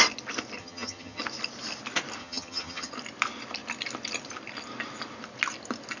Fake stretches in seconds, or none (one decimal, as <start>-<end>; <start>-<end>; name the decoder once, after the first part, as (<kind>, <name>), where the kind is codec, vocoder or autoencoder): 0.6-1.2 (vocoder, HiFi-GAN); 2.2-2.9